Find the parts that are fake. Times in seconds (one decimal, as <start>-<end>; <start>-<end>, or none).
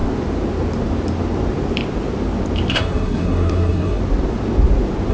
2.7-4.0